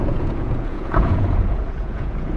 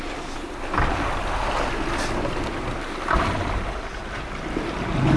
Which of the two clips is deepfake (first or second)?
first